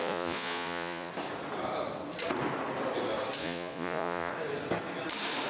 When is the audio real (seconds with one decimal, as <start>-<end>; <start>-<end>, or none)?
1.1-3.4; 4.3-5.5